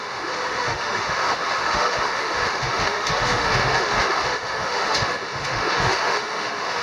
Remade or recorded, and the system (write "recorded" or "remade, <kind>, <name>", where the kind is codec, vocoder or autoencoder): remade, autoencoder, DAC-VAE